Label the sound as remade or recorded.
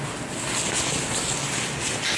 recorded